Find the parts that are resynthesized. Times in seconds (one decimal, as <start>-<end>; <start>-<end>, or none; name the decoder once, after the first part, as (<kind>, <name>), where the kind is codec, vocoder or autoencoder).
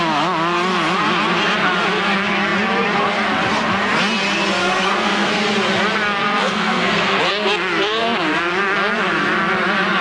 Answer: 4.6-5.4 (codec, SNAC); 6.2-7.2